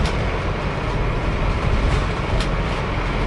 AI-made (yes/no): yes